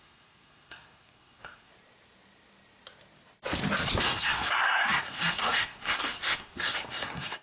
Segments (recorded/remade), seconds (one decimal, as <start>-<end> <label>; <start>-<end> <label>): 0.0-1.7 remade; 1.7-4.0 recorded; 4.0-7.4 remade